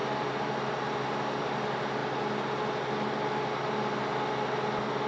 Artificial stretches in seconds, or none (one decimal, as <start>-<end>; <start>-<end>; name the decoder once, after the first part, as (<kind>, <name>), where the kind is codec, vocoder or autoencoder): none